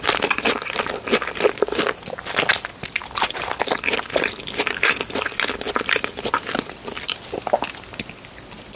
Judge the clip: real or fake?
real